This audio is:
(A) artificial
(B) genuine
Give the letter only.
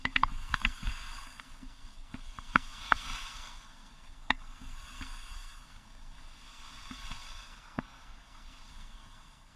A